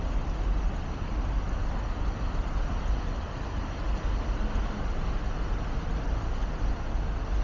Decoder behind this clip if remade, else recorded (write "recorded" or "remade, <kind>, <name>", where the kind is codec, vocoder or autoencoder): recorded